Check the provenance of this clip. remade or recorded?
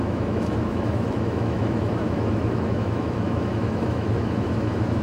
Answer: remade